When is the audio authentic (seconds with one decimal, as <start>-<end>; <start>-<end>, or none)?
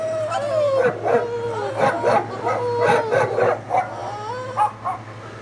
0.0-5.4